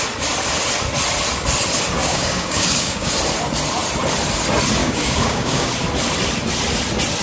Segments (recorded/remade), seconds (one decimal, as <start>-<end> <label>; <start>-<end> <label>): 0.0-2.0 recorded; 2.0-3.1 remade; 3.1-4.8 recorded; 4.8-5.7 remade; 5.7-7.2 recorded